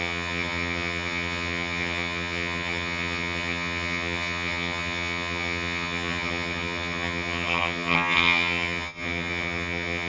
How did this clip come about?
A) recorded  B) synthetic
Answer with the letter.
B